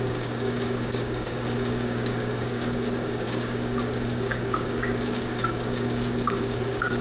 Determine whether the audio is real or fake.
fake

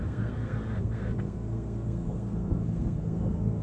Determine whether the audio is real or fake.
fake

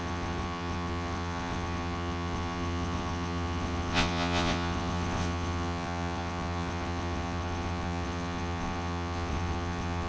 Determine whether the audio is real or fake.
fake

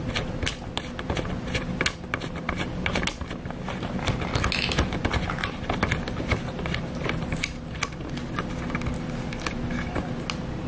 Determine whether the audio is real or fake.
real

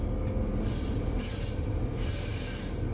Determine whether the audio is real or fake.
real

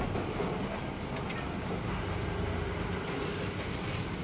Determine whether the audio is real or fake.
real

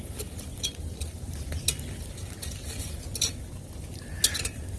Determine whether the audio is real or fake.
fake